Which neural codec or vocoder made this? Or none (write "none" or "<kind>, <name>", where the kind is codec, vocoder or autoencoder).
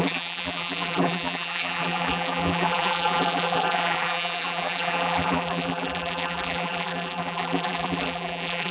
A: vocoder, BigVGAN v2